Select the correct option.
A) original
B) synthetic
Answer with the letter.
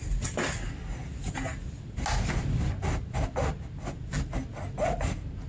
A